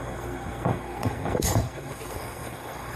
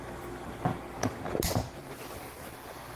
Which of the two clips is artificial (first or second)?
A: first